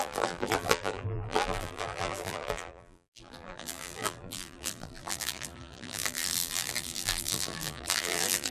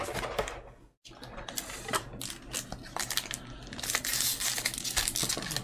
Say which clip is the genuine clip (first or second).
second